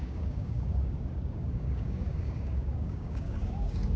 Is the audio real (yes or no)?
no